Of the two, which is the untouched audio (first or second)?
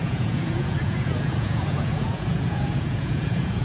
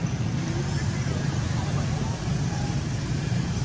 second